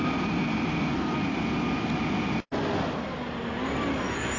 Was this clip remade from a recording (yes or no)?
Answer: no